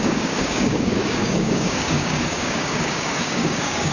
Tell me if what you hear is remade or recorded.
remade